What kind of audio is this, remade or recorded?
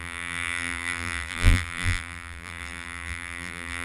remade